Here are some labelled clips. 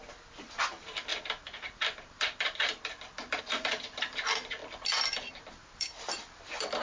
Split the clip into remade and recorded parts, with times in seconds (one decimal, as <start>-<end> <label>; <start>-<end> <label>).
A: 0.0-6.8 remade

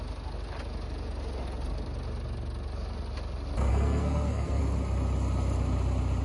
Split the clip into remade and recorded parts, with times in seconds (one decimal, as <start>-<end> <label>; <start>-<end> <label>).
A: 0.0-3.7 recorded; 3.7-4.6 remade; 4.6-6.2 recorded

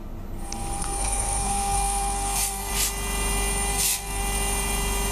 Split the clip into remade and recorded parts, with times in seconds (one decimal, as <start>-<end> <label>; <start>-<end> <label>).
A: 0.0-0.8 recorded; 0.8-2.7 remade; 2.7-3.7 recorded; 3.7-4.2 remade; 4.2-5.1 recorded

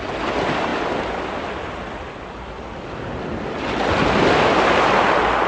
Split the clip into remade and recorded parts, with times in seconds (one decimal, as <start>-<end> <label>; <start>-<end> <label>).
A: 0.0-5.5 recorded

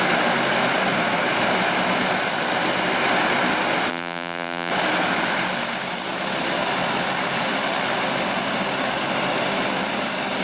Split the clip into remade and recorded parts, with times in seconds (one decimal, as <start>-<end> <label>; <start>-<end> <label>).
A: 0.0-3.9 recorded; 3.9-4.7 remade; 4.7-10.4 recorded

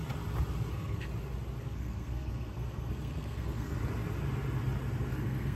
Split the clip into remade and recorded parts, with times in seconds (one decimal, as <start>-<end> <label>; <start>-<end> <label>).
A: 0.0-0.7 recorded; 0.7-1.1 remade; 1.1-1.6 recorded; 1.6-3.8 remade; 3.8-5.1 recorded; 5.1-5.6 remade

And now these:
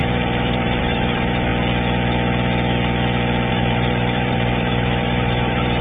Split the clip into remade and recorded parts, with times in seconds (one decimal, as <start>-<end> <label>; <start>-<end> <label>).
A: 0.0-1.5 remade; 1.5-3.5 recorded; 3.5-5.8 remade